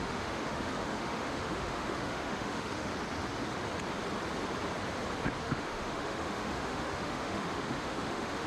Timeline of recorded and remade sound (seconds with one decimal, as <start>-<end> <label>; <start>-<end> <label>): 0.0-2.9 remade; 2.9-5.4 recorded; 5.4-8.5 remade